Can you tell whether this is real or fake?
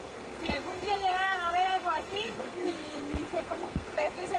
fake